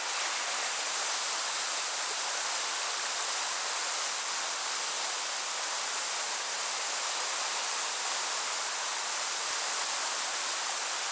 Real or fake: real